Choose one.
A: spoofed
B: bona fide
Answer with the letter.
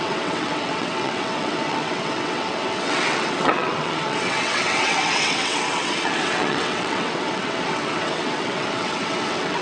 A